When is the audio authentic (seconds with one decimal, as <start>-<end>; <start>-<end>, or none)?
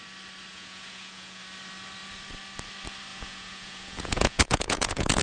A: 0.0-0.5; 1.4-3.1